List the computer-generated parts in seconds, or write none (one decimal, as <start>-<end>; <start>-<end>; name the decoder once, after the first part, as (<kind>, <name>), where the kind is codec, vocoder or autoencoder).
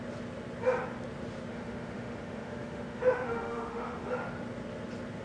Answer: 1.5-4.1 (autoencoder, DAC-VAE)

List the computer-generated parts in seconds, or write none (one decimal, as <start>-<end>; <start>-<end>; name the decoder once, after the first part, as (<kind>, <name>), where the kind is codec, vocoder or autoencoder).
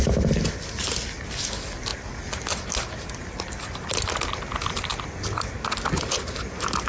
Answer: none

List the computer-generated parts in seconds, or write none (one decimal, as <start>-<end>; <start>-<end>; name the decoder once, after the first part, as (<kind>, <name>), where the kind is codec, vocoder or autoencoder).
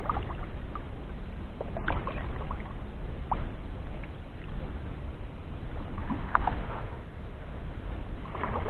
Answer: 6.0-7.9 (autoencoder, DAC-VAE)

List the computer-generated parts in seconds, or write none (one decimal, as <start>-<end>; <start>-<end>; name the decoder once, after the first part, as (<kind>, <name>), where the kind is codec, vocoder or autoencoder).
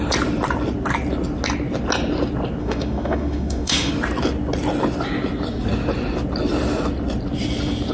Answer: 2.6-3.9 (autoencoder, DAC-VAE)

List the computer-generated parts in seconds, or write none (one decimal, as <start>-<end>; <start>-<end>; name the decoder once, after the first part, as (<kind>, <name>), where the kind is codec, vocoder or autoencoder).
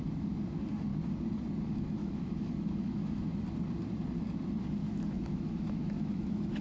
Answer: 2.0-3.4 (autoencoder, DAC-VAE); 4.8-6.6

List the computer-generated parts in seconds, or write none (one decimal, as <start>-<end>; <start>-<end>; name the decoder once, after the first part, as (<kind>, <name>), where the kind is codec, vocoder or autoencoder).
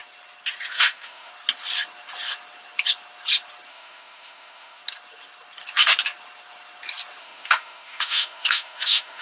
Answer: 0.7-1.3 (autoencoder, DAC-VAE); 3.7-4.8; 7.2-9.2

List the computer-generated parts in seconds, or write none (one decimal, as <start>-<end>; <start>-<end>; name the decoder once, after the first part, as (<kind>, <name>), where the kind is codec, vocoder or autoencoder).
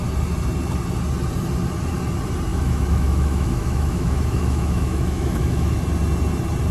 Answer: 2.5-5.8 (autoencoder, DAC-VAE)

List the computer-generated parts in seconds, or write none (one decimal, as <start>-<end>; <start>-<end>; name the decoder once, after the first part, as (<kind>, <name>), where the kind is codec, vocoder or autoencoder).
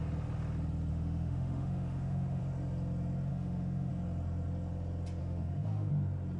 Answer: 0.9-2.4 (autoencoder, DAC-VAE); 3.3-3.9; 5.2-5.9